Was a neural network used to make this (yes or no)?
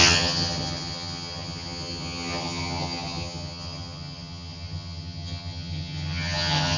yes